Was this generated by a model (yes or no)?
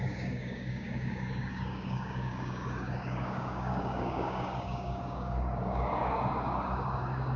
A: yes